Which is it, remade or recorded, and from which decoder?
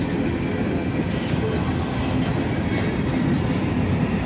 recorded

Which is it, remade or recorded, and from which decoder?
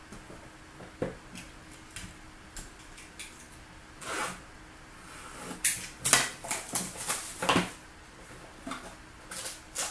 recorded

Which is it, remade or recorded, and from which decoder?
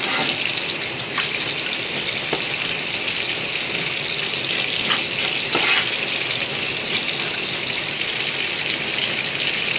recorded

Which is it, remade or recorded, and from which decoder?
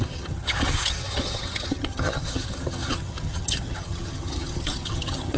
remade, vocoder, HiFi-GAN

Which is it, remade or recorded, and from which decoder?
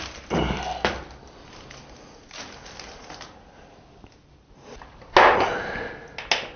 recorded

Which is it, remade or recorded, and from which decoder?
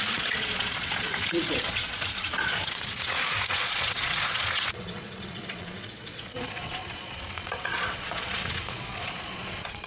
remade, vocoder, Vocos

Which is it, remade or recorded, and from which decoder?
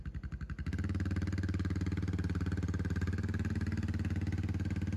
recorded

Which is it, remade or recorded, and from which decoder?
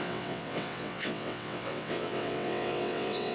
remade, vocoder, WaveNeXt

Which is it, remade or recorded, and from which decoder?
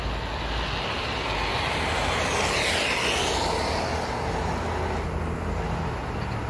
recorded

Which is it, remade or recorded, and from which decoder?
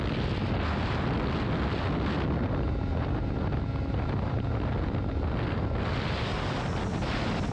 recorded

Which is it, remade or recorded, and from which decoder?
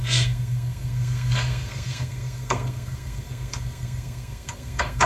remade, codec, SNAC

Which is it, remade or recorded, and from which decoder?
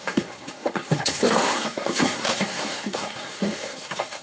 remade, codec, SNAC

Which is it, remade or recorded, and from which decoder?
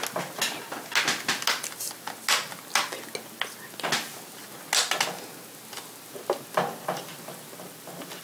recorded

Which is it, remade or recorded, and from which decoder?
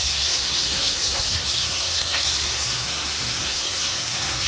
remade, codec, SNAC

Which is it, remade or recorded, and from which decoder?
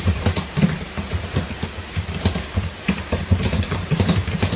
remade, vocoder, BigVGAN v2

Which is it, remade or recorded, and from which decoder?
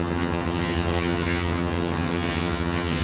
remade, vocoder, HiFi-GAN